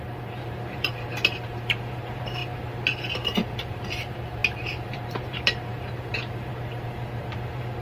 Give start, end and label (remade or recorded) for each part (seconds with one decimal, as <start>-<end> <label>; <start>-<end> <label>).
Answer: 0.0-7.8 remade